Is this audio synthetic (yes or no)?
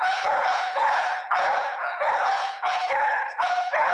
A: yes